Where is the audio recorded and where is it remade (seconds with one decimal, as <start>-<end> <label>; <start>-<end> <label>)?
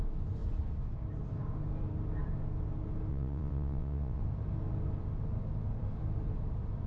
0.0-3.1 recorded; 3.1-4.2 remade; 4.2-6.9 recorded